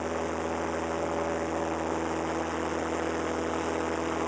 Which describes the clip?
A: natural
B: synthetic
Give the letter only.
A